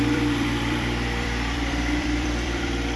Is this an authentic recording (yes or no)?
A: no